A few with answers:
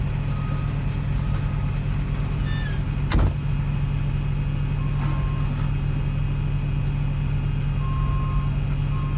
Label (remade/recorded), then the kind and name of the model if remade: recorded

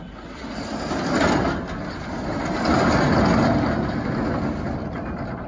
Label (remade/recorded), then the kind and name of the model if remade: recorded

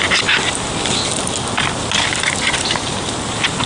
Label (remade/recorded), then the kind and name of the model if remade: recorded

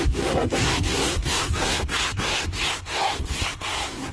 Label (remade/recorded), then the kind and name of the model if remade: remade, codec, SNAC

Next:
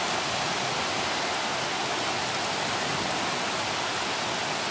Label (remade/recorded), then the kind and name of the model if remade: recorded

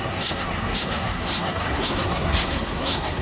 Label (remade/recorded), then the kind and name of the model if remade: remade, codec, SNAC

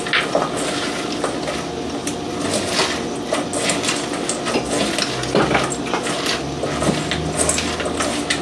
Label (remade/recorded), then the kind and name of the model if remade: recorded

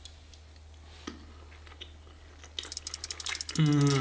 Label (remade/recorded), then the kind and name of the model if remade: recorded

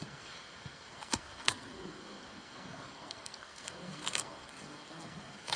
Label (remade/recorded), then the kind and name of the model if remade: remade, codec, SNAC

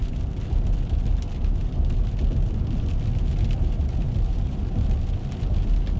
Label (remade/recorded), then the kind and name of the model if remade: recorded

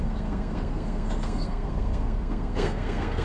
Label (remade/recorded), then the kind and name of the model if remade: remade, codec, SNAC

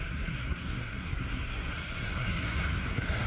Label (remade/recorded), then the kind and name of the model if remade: remade, codec, SNAC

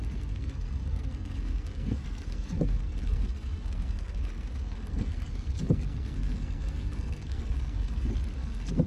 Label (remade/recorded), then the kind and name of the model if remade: remade, codec, SNAC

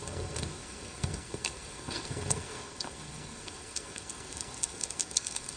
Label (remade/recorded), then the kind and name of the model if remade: remade, codec, SNAC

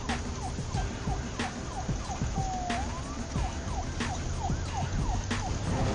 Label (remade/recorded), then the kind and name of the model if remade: recorded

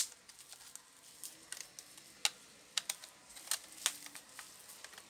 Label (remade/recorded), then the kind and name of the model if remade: recorded